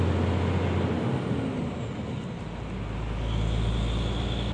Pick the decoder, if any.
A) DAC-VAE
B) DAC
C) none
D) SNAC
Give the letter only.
C